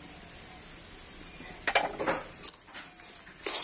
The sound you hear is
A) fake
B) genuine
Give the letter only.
B